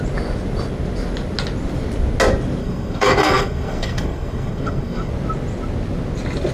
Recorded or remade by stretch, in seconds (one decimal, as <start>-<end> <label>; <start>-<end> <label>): 0.0-2.6 recorded; 2.6-5.1 remade; 5.1-6.5 recorded